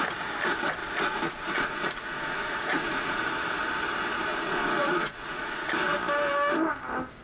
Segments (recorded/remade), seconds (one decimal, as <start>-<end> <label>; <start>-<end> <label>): 0.0-0.8 recorded; 0.8-3.2 remade; 3.2-4.3 recorded; 4.3-5.7 remade; 5.7-7.2 recorded